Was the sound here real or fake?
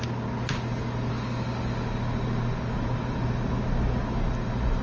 real